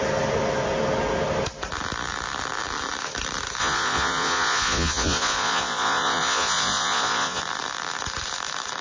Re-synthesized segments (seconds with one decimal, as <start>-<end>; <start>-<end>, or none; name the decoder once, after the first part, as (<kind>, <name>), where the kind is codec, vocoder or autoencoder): 3.6-7.4 (vocoder, Vocos)